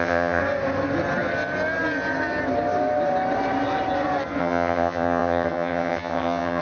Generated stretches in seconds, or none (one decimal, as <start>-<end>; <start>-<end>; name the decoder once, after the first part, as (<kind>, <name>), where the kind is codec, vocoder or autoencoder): 0.0-0.4 (vocoder, HiFi-GAN); 4.4-6.6